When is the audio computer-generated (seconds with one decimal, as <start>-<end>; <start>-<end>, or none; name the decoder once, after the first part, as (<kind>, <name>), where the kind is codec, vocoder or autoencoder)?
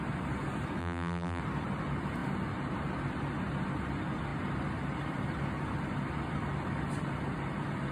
0.8-1.4 (vocoder, BigVGAN v2)